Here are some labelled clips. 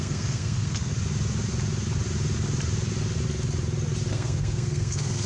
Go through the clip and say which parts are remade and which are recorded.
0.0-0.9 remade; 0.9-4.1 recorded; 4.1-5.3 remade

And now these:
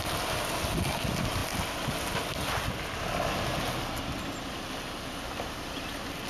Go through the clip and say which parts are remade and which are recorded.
0.0-6.3 recorded

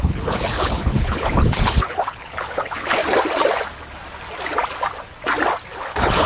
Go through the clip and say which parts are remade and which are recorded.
0.0-3.0 remade; 3.0-5.7 recorded; 5.7-6.3 remade

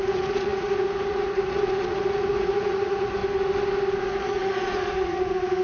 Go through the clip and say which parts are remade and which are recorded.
0.0-3.2 remade; 3.2-4.0 recorded; 4.0-5.6 remade

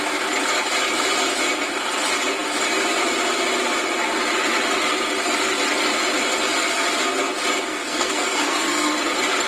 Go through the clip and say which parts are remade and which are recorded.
0.0-7.7 recorded; 7.7-8.9 remade; 8.9-9.5 recorded

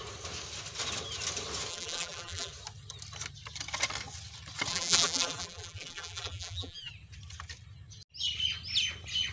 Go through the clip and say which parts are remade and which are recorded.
0.0-1.7 recorded; 1.7-2.5 remade; 2.5-4.7 recorded; 4.7-6.9 remade; 6.9-9.3 recorded

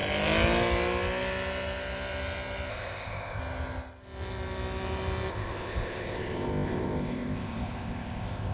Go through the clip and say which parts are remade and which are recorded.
0.0-2.7 recorded; 2.7-3.4 remade; 3.4-5.3 recorded; 5.3-8.5 remade